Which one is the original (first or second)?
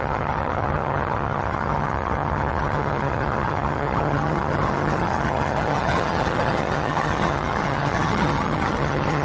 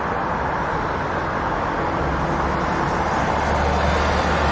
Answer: second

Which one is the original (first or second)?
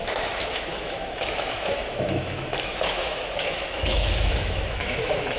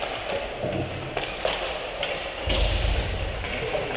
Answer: second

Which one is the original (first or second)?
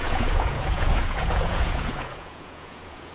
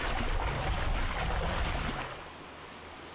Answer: second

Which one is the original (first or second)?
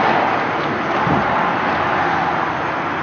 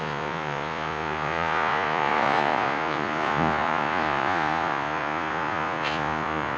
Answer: first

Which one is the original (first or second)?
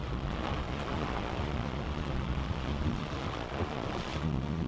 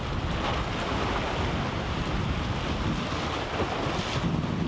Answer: second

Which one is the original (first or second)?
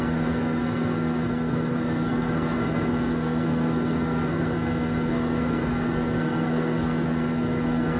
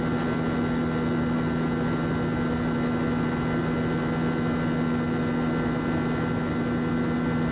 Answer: second